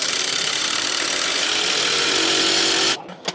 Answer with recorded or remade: recorded